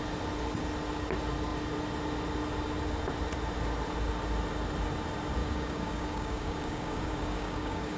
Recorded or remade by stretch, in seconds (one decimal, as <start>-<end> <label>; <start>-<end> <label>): 0.0-5.4 recorded; 5.4-8.0 remade